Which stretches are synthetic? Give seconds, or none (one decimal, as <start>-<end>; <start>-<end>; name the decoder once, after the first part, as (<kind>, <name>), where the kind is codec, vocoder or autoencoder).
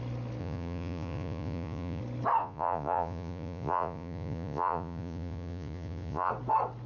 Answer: 0.4-2.0 (vocoder, Vocos); 2.4-6.3